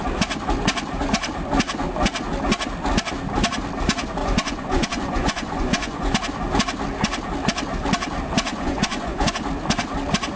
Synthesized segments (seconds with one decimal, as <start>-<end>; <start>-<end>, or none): 4.2-6.1; 8.5-9.3